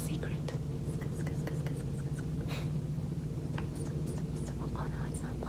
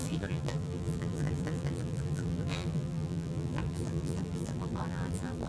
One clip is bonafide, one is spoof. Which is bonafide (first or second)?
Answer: first